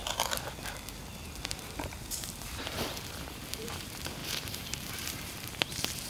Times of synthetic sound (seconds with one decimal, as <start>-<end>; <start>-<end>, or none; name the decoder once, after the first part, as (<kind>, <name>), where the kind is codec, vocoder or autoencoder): 2.0-6.1 (vocoder, BigVGAN v2)